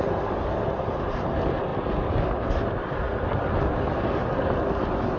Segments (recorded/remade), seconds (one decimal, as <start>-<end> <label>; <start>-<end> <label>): 0.0-5.2 recorded